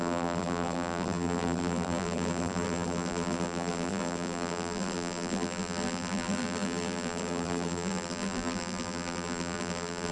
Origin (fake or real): fake